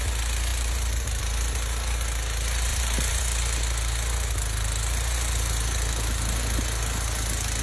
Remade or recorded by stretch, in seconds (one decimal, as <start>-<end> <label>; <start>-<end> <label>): 0.0-0.5 recorded; 0.5-1.2 remade; 1.2-2.7 recorded; 2.7-3.2 remade; 3.2-7.6 recorded